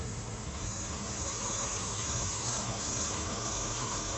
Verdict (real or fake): fake